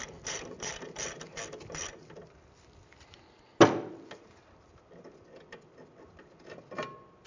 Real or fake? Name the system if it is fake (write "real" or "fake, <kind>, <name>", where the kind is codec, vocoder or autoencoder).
real